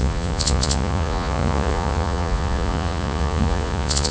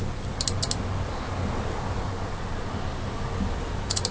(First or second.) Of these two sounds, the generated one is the first